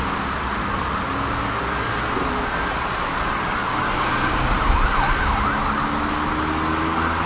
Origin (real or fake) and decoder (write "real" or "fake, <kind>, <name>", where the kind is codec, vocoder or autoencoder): real